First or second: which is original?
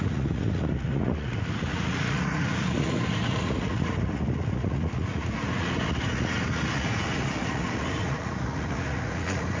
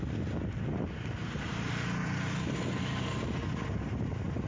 second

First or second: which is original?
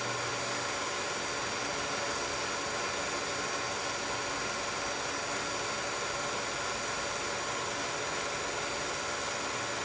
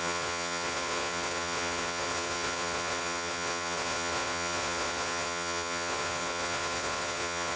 first